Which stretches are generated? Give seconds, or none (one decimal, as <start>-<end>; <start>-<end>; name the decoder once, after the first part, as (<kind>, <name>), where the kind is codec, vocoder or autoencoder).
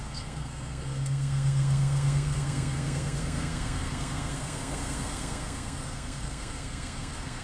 0.0-7.4 (codec, SNAC)